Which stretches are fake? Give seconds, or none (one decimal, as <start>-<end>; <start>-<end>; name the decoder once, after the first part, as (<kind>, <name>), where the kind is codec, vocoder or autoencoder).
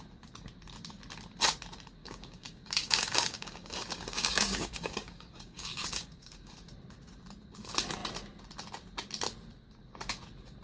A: 2.0-6.5 (codec, DAC)